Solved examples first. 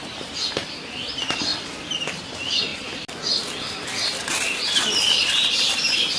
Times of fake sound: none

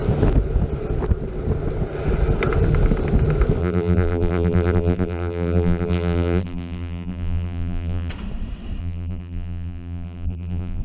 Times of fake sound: 3.6-8.1 (vocoder, BigVGAN v2); 8.8-10.8

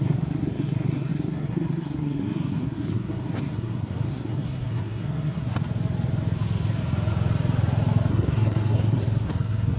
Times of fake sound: 0.0-5.6 (codec, SNAC); 8.1-9.8